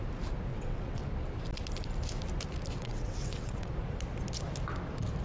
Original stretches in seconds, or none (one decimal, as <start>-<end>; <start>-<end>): 0.0-0.5; 1.0-2.8; 3.7-5.2

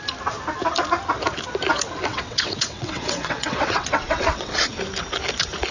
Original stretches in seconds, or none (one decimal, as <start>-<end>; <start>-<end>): 0.0-2.1; 4.6-5.7

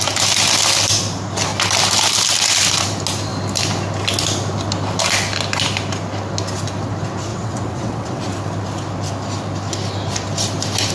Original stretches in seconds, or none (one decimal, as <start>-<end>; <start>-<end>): 0.0-7.3; 8.2-10.9

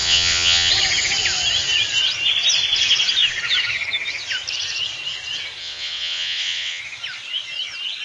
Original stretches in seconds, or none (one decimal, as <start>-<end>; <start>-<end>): 0.7-5.6; 6.8-8.0